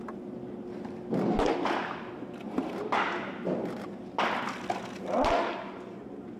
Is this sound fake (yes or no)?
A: no